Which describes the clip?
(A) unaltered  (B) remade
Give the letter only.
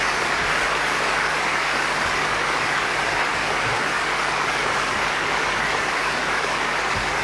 B